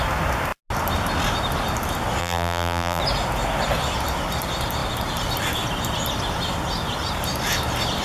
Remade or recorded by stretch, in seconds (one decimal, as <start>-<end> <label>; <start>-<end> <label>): 0.0-2.2 recorded; 2.2-3.0 remade; 3.0-8.0 recorded